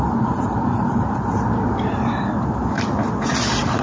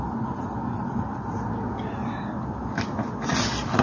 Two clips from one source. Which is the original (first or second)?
second